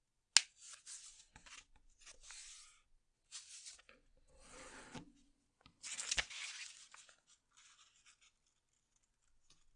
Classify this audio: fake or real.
real